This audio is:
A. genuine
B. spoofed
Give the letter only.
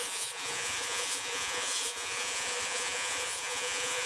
B